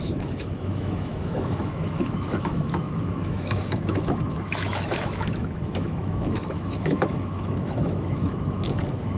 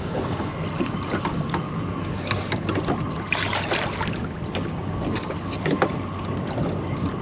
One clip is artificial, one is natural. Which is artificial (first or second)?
first